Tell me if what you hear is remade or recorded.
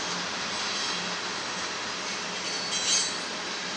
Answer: recorded